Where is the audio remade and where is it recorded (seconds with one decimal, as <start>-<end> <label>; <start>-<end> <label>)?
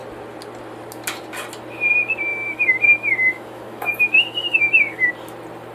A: 0.0-2.3 recorded; 2.3-5.1 remade; 5.1-5.7 recorded